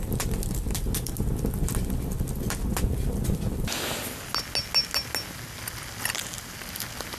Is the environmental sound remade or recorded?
recorded